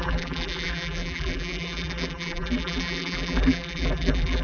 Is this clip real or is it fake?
fake